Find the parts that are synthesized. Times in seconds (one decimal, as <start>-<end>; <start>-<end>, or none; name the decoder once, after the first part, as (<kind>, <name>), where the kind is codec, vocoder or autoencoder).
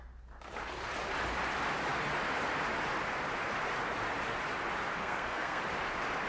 5.0-5.6 (codec, SNAC)